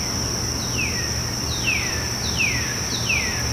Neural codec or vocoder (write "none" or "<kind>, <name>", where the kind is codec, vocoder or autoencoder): none